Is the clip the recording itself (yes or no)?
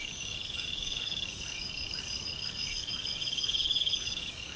no